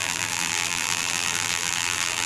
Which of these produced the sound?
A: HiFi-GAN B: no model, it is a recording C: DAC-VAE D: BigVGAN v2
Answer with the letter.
D